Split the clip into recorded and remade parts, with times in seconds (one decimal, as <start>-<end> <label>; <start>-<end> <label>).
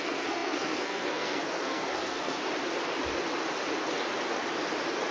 0.0-2.4 remade; 2.4-5.1 recorded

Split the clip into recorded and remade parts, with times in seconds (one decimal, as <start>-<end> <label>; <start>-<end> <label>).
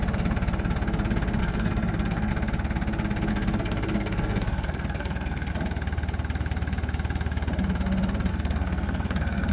0.0-1.4 recorded; 1.4-2.3 remade; 2.3-3.3 recorded; 3.3-5.5 remade; 5.5-8.3 recorded; 8.3-9.5 remade